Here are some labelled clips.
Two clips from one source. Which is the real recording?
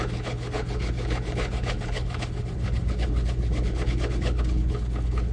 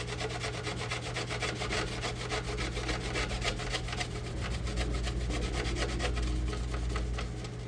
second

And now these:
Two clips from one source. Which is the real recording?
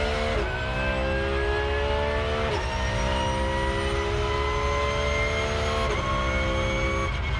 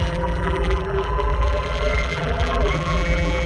first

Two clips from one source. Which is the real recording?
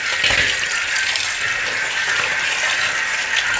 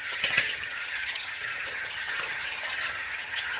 first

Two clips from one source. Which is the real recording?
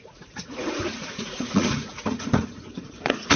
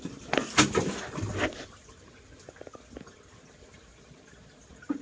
second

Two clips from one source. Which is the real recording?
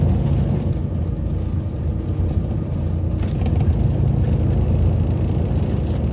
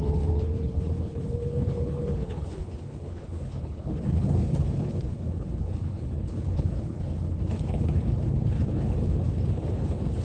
first